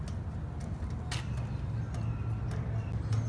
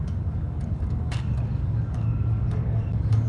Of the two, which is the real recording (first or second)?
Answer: first